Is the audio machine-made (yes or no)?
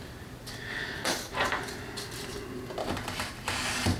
no